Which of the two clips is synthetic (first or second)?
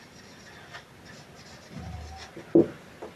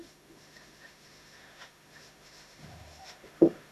second